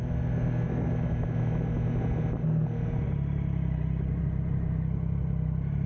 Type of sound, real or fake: real